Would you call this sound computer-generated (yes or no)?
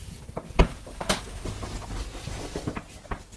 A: no